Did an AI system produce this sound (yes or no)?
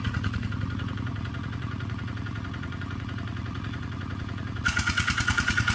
yes